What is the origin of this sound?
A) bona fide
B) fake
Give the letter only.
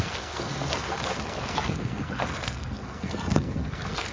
B